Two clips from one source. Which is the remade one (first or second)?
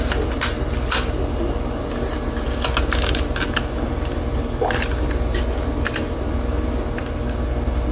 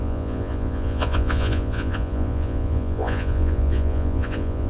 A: second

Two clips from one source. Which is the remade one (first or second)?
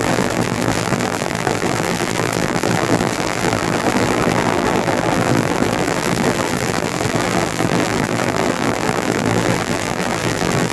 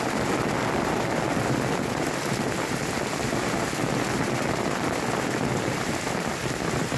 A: first